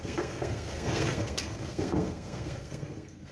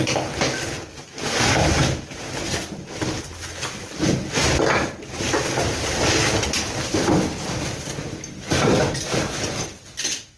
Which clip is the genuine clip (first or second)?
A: second